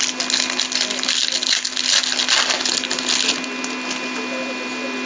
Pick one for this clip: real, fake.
real